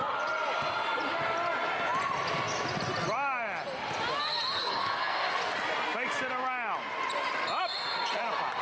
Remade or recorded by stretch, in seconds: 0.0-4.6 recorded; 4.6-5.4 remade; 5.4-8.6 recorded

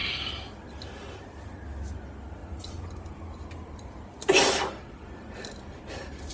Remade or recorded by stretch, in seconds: 0.0-6.3 recorded